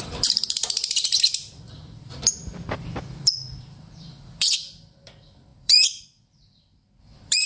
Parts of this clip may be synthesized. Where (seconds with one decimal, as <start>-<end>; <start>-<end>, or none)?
0.0-7.5